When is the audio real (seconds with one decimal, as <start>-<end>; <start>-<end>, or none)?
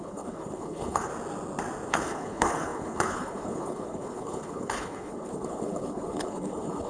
1.1-1.9